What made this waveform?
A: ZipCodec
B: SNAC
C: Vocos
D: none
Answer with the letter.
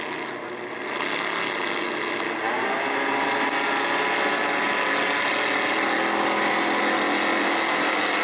D